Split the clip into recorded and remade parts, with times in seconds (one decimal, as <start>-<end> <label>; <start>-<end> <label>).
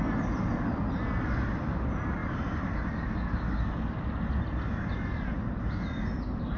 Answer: 0.0-6.6 recorded